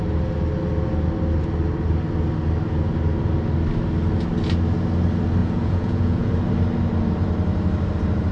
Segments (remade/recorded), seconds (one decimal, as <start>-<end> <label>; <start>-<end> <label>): 0.0-5.4 recorded; 5.4-6.3 remade; 6.3-8.3 recorded